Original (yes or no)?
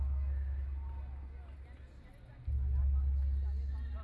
yes